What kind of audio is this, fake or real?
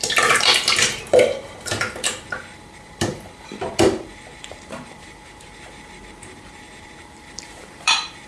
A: fake